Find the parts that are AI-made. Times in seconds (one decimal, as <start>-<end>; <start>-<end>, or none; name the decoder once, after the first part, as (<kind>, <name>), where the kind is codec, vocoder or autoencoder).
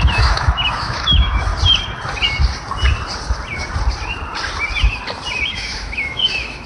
0.0-1.5 (autoencoder, DAC-VAE); 5.5-6.7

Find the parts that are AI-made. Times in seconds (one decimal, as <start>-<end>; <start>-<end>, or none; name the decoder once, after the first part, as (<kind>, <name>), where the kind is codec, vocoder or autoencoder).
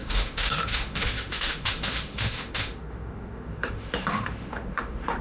0.0-5.2 (autoencoder, DAC-VAE)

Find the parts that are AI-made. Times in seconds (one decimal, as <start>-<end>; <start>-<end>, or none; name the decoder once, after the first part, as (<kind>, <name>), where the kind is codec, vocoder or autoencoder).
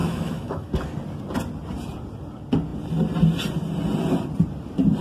0.0-0.7 (autoencoder, DAC-VAE)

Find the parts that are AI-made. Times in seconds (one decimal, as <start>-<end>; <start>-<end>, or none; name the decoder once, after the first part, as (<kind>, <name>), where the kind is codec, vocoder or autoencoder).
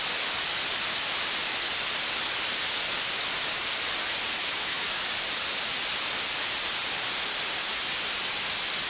4.4-5.0 (autoencoder, DAC-VAE)